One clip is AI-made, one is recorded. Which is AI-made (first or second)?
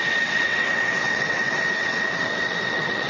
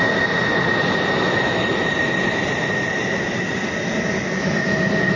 first